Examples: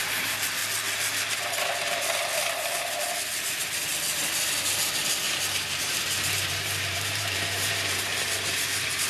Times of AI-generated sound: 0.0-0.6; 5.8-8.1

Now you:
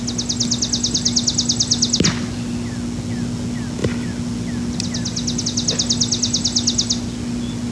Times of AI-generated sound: none

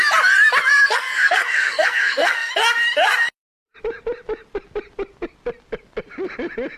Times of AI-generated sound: 0.7-2.5